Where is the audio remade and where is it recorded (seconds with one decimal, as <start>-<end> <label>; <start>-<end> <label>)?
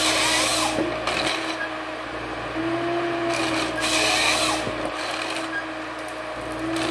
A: 0.0-6.9 recorded